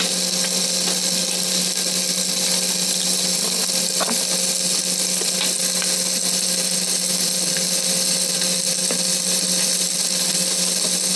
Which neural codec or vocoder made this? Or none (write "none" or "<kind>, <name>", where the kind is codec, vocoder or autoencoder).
none